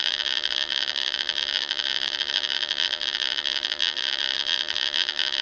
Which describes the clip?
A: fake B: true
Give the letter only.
A